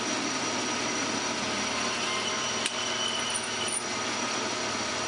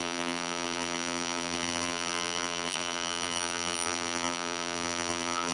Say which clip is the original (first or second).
first